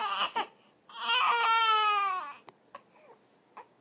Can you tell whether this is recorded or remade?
recorded